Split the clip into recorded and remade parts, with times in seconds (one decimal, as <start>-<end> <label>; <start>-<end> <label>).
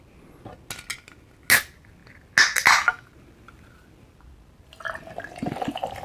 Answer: 0.0-6.0 recorded